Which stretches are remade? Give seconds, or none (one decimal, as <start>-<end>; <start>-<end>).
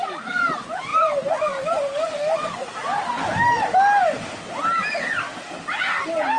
none